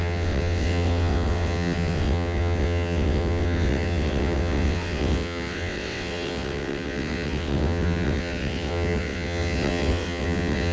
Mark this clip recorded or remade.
remade